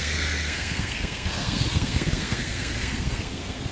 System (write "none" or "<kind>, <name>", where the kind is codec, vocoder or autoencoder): codec, SNAC